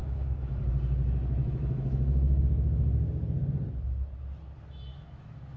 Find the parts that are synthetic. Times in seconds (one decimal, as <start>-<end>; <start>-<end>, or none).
0.0-0.7; 1.4-2.4; 4.9-5.6